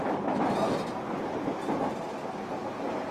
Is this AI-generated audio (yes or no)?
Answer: no